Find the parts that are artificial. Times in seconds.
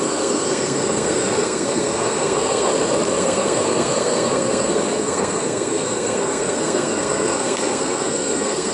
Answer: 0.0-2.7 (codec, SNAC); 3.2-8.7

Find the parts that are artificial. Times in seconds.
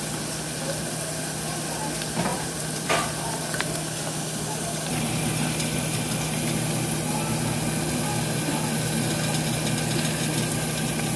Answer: 2.3-3.6 (vocoder, BigVGAN v2)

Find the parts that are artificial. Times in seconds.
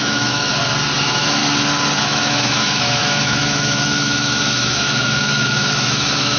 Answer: 0.0-0.5 (autoencoder, DAC-VAE); 1.0-1.4; 2.0-6.4